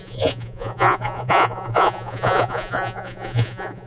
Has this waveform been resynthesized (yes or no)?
yes